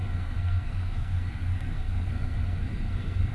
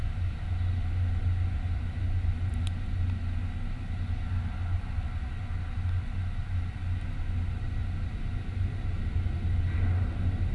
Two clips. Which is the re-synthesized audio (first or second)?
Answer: first